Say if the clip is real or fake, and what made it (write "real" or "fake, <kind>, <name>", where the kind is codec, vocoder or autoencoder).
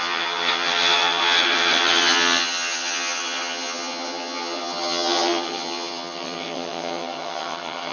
fake, vocoder, HiFi-GAN